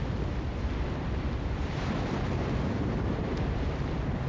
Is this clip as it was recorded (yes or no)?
yes